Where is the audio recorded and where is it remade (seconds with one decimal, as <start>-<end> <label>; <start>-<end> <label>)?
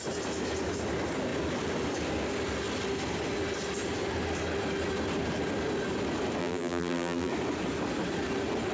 0.0-6.4 recorded; 6.4-7.3 remade; 7.3-8.7 recorded